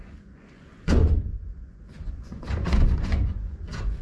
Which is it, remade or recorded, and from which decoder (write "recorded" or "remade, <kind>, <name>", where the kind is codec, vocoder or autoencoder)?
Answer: remade, vocoder, Vocos